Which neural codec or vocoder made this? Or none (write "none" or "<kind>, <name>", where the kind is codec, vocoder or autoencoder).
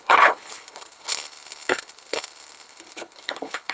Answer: codec, HILCodec